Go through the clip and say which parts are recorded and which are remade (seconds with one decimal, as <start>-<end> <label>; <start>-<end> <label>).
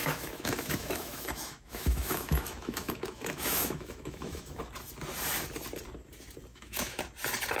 0.0-4.6 remade; 4.6-6.5 recorded; 6.5-7.0 remade; 7.0-7.6 recorded